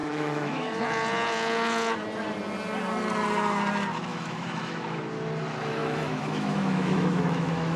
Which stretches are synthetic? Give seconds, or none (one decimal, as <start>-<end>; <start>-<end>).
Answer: 0.0-0.8; 4.1-5.0; 5.8-7.8